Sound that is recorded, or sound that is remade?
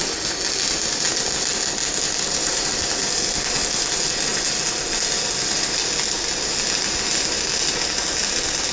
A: recorded